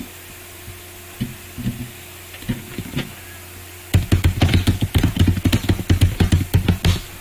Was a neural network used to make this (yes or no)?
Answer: no